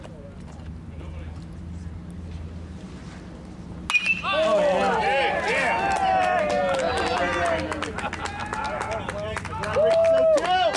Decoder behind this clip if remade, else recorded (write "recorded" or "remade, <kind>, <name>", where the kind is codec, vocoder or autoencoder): recorded